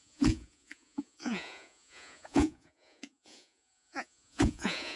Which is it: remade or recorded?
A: remade